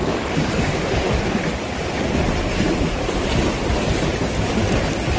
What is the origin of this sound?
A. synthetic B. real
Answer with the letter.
B